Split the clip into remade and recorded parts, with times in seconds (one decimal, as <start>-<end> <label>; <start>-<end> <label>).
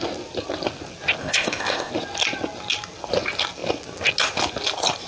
0.0-1.2 recorded; 1.2-1.9 remade; 1.9-5.1 recorded